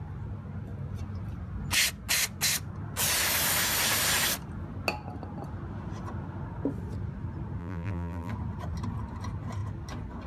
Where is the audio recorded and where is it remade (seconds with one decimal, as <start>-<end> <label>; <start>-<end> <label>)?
0.0-7.6 recorded; 7.6-8.3 remade; 8.3-10.3 recorded